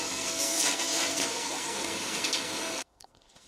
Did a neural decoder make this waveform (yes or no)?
yes